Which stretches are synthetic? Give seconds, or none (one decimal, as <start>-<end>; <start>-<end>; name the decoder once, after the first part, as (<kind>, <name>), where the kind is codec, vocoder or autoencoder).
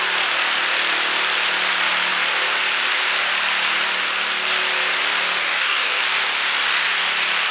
5.4-6.0 (codec, DAC)